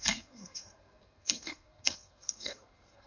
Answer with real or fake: fake